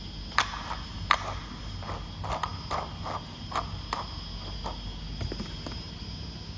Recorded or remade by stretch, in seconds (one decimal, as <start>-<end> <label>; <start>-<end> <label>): 0.0-6.6 recorded